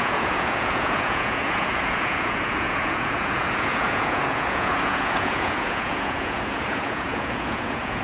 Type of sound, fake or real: fake